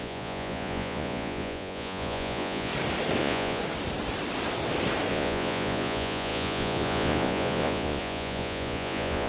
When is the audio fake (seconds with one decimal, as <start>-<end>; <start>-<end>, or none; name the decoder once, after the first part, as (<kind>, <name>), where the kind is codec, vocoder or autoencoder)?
0.0-2.7 (vocoder, Vocos); 3.2-3.6; 5.1-9.3